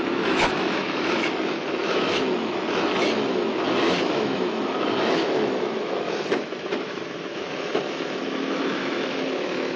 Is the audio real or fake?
fake